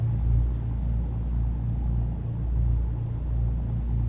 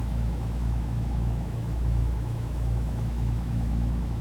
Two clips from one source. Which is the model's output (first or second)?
second